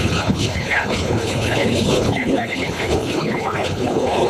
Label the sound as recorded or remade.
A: remade